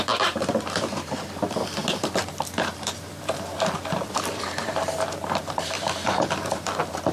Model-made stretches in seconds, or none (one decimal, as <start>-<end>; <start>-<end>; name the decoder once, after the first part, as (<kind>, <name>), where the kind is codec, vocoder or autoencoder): 0.0-7.1 (vocoder, BigVGAN v2)